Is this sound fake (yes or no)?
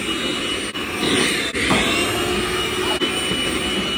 no